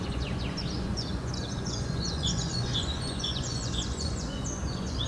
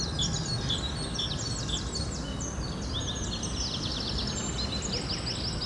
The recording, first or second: second